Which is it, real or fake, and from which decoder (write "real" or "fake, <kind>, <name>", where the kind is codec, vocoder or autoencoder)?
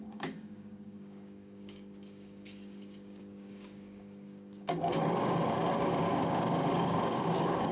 fake, codec, DAC